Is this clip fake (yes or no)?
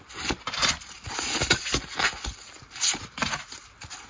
no